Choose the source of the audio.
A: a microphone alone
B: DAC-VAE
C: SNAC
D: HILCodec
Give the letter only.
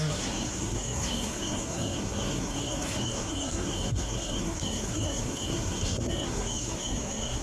C